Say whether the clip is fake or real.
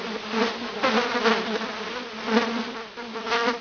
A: real